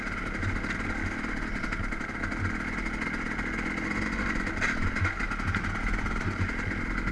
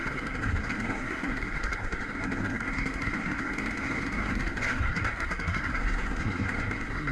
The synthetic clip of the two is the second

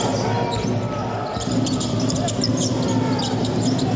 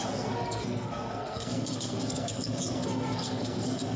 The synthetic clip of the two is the second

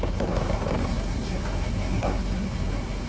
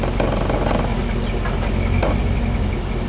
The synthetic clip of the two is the first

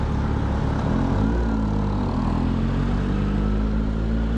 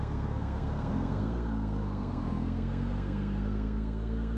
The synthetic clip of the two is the second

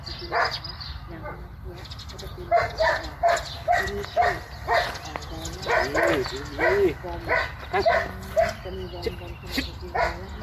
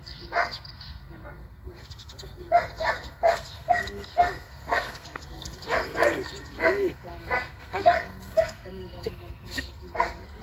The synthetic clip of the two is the second